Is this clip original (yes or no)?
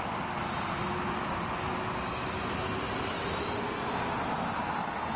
yes